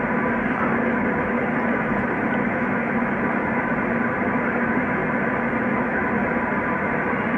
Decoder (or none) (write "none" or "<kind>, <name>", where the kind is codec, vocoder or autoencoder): none